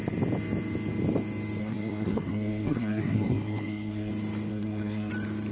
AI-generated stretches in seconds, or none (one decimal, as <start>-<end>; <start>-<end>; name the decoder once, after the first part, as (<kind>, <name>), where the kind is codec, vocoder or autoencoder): 1.6-4.1 (codec, SNAC); 4.5-5.1